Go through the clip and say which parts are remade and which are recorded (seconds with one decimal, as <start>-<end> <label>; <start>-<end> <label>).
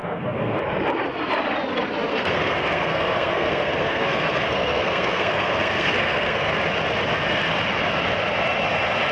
0.0-0.6 remade; 0.6-2.1 recorded; 2.1-6.5 remade; 6.5-9.1 recorded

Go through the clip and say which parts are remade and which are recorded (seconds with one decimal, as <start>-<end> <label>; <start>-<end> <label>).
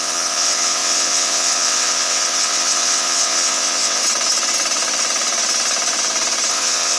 0.0-4.0 remade; 4.0-6.5 recorded; 6.5-7.0 remade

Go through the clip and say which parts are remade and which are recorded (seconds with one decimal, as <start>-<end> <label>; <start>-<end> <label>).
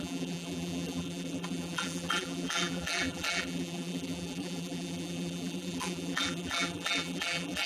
0.0-7.7 remade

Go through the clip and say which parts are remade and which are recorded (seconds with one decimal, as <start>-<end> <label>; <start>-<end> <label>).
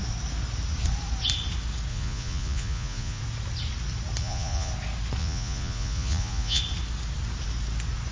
0.0-1.9 recorded; 1.9-3.2 remade; 3.2-4.2 recorded; 4.2-4.7 remade; 4.7-5.2 recorded; 5.2-6.6 remade; 6.6-8.1 recorded